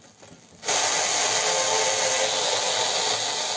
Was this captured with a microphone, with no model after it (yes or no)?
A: yes